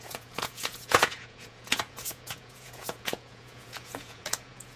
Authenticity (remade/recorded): remade